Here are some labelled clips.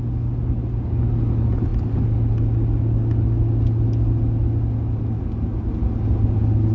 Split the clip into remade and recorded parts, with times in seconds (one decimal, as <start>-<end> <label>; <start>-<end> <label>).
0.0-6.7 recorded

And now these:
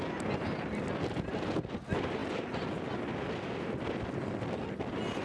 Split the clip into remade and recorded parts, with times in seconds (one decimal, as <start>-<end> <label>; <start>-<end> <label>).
0.0-5.2 recorded

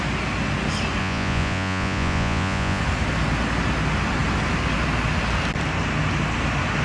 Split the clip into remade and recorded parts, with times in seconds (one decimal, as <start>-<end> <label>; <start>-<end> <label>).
0.0-1.0 recorded; 1.0-2.8 remade; 2.8-6.8 recorded